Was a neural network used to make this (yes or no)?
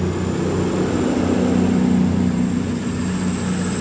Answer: no